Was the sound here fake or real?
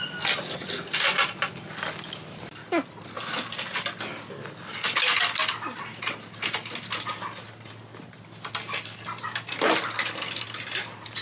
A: real